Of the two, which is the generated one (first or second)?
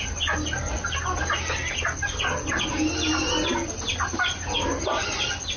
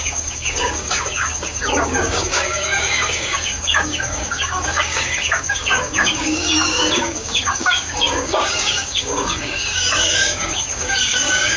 second